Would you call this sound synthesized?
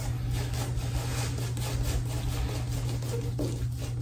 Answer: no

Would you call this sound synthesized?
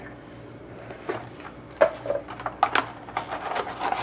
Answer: no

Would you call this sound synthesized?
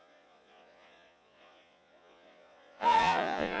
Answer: yes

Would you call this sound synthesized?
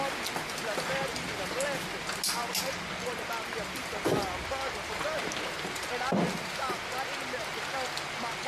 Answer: no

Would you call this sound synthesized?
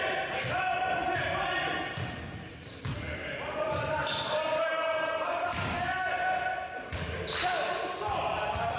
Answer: no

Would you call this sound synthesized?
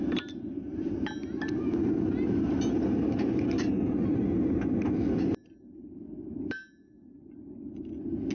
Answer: no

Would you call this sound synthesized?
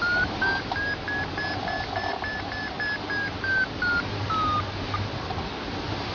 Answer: no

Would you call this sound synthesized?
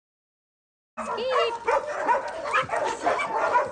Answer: no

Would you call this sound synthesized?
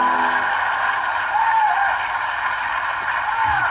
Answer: no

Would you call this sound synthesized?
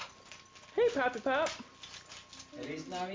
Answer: no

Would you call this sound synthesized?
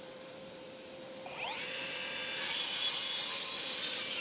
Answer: no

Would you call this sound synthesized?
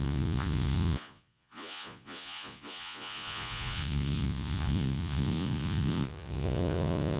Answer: yes